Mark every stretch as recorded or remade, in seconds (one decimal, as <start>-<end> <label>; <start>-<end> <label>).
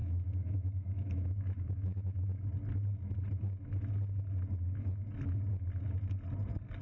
0.0-2.5 remade; 2.5-6.8 recorded